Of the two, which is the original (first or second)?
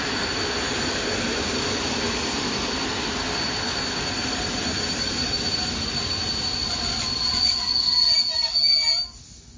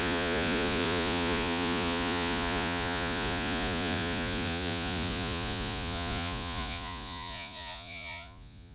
first